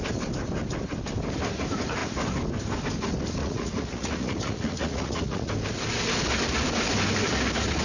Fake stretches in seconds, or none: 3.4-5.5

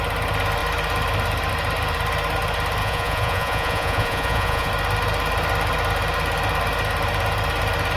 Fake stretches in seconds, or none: 2.8-4.7

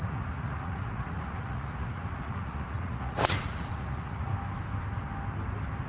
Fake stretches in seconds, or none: 0.0-4.3

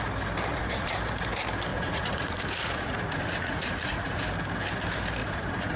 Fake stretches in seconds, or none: 0.5-1.0; 1.7-4.2; 5.2-5.8

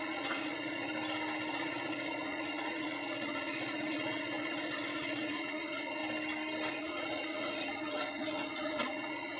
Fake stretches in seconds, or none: 0.0-0.9; 1.5-6.0; 6.7-9.4

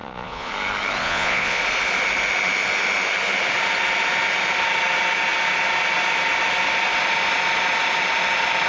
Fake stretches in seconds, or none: 0.0-0.5; 1.0-1.6

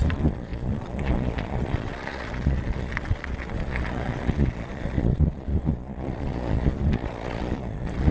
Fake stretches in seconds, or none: 0.0-8.1

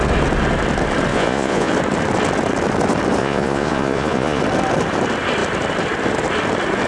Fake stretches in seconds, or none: 1.1-1.7; 3.2-4.4